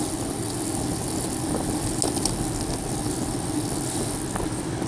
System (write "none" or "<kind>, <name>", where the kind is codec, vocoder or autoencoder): none